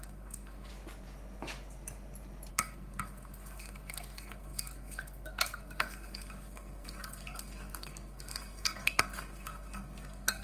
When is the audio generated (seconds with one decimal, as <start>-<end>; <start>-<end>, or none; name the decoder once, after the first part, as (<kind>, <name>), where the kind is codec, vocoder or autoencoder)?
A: 0.0-0.7 (codec, SNAC); 2.5-10.4